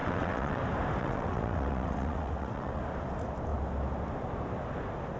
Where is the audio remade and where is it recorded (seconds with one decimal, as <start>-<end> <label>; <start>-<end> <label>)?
0.0-0.6 remade; 0.6-1.0 recorded; 1.0-2.8 remade; 2.8-5.2 recorded